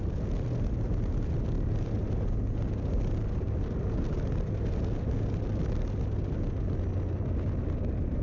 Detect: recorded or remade recorded